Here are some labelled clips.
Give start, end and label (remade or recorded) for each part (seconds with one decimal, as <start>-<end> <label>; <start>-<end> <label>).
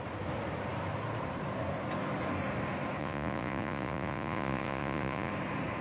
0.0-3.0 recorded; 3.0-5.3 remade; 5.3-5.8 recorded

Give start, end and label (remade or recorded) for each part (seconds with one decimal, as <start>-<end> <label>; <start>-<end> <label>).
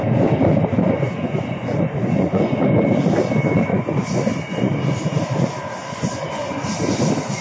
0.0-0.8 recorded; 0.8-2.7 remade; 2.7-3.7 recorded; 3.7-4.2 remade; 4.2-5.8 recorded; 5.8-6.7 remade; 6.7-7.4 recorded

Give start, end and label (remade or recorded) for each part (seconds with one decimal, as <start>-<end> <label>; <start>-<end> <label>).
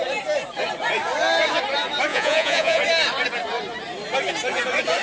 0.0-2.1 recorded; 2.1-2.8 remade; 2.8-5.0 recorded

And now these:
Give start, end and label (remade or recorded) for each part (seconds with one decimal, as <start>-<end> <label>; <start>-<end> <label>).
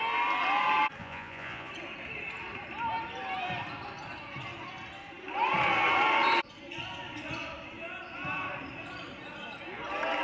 0.0-1.0 recorded; 1.0-1.7 remade; 1.7-10.2 recorded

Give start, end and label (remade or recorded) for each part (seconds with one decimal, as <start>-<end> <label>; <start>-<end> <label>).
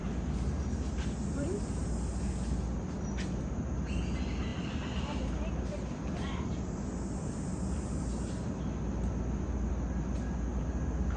0.0-11.2 recorded